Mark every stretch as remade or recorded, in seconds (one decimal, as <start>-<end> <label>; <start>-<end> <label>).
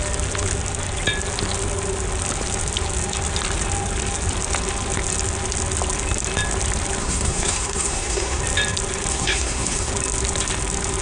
0.0-7.0 recorded; 7.0-8.4 remade; 8.4-9.1 recorded; 9.1-9.9 remade; 9.9-11.0 recorded